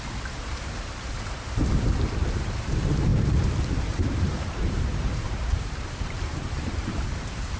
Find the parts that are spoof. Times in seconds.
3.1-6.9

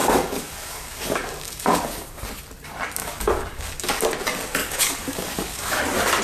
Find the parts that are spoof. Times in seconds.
0.0-2.2; 3.0-4.0; 4.6-5.8

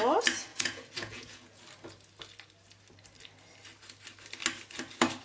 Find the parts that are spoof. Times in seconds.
0.5-1.6

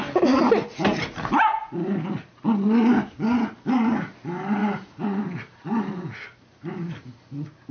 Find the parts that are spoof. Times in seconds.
4.6-5.2

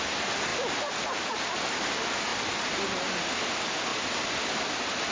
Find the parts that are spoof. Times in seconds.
0.5-1.4; 2.3-2.8; 3.9-5.1

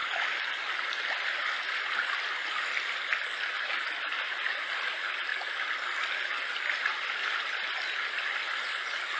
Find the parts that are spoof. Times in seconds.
none

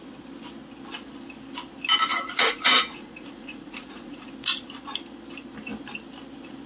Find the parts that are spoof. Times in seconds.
2.1-4.3

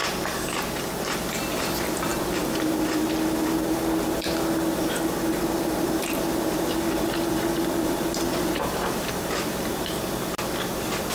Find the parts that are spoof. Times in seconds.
1.0-2.1; 5.2-11.1